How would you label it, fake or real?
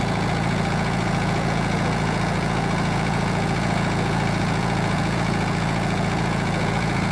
fake